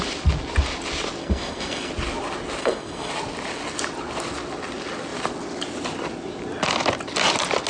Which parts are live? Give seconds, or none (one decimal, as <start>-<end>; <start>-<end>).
0.0-1.2; 1.9-2.6; 3.1-7.7